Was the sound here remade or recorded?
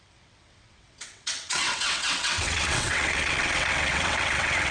remade